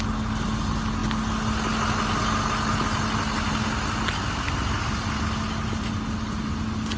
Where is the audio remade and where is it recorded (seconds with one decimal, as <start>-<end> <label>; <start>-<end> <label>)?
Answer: 0.0-7.0 recorded